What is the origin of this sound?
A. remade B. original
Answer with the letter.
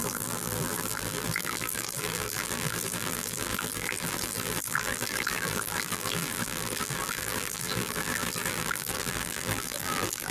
A